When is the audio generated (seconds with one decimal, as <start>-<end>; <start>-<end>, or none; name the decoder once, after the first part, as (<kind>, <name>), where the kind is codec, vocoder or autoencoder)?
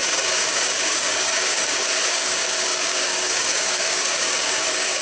0.0-5.0 (codec, DAC)